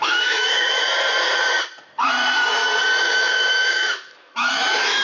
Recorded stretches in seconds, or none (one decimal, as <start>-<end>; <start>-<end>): 0.8-3.0

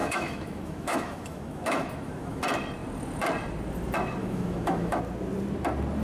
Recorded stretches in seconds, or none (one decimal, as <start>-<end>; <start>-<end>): 2.4-4.2; 5.0-6.0

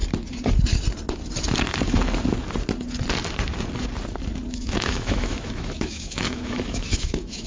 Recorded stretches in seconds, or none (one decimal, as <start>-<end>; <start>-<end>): 0.0-4.5

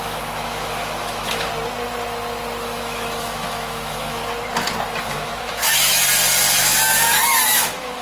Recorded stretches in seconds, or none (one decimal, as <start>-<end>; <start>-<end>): 1.5-2.6; 4.2-5.0; 6.0-6.6